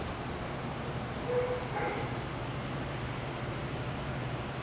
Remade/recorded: recorded